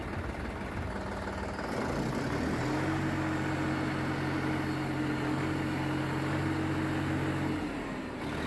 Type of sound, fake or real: real